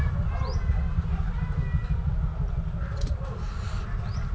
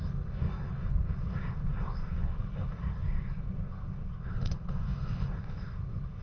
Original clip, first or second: first